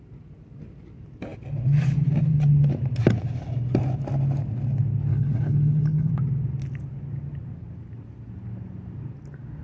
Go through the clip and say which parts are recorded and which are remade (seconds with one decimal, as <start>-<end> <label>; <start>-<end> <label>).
0.0-5.1 recorded; 5.1-6.1 remade; 6.1-9.6 recorded